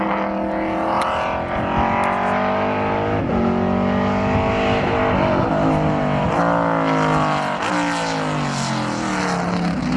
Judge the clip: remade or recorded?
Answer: recorded